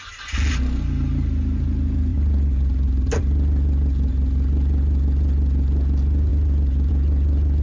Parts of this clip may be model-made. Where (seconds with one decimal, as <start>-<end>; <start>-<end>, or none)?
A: 2.1-3.2; 6.3-6.9